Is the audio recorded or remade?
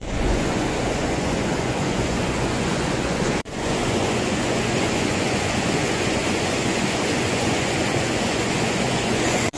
remade